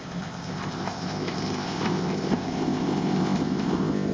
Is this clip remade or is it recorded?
remade